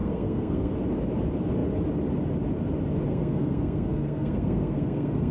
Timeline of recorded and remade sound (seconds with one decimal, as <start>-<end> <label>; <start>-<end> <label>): 0.0-0.7 remade; 0.7-3.1 recorded; 3.1-5.3 remade